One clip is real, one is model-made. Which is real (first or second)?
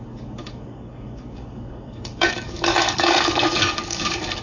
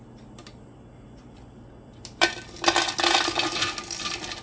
second